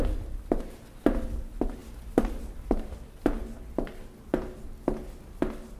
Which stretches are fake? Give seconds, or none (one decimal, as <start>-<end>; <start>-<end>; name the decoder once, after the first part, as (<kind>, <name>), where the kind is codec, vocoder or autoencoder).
none